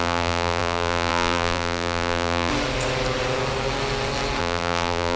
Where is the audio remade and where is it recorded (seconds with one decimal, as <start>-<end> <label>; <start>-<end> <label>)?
0.0-2.5 remade; 2.5-4.4 recorded; 4.4-5.2 remade